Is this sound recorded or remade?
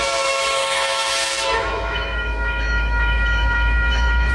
remade